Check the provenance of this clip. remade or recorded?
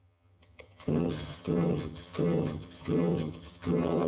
remade